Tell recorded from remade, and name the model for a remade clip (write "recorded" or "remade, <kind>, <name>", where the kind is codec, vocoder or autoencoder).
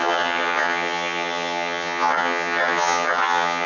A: remade, vocoder, HiFi-GAN